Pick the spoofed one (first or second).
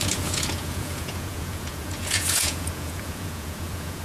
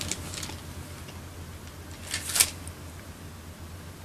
first